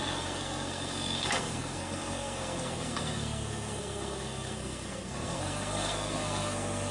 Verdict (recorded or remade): remade